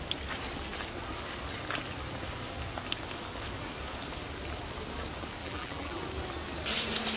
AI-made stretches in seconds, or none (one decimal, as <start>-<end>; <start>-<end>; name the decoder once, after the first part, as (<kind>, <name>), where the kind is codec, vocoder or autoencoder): 5.4-6.0 (vocoder, BigVGAN v2)